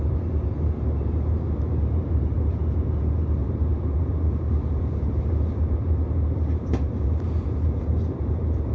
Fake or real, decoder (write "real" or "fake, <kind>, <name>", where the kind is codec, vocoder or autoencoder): fake, vocoder, BigVGAN v2